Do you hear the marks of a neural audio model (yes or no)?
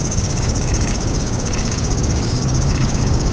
yes